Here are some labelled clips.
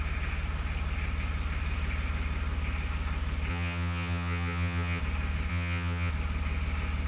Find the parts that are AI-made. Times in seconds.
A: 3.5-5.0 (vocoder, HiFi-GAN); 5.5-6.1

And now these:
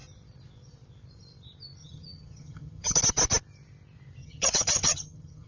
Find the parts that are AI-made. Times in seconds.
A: 1.8-3.0 (vocoder, HiFi-GAN); 4.2-5.5

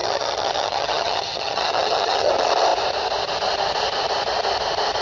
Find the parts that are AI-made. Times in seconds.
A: 0.0-2.3 (vocoder, HiFi-GAN)

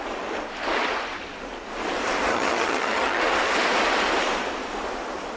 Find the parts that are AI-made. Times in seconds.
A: 2.3-3.2 (vocoder, HiFi-GAN)

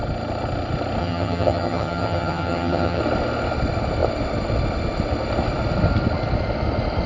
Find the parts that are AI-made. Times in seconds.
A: 1.0-3.0 (vocoder, HiFi-GAN)

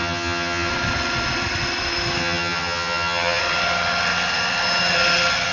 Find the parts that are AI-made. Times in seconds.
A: 0.0-0.7 (vocoder, HiFi-GAN); 2.2-3.4

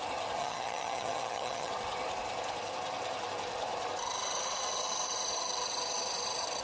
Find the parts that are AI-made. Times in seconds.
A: 0.4-1.7 (vocoder, HiFi-GAN)